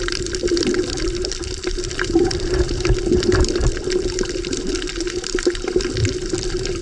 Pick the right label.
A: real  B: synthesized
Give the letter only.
B